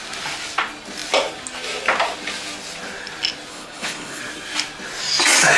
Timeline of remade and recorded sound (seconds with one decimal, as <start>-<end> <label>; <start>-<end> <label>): 0.0-3.5 recorded; 3.5-4.2 remade; 4.2-5.6 recorded